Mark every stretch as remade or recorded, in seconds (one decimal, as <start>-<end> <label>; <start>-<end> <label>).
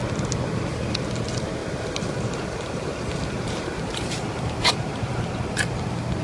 0.0-1.6 recorded; 1.6-5.3 remade; 5.3-6.2 recorded